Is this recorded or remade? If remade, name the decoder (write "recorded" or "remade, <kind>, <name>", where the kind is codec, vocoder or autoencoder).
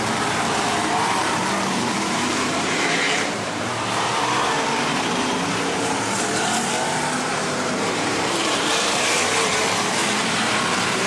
remade, vocoder, BigVGAN v2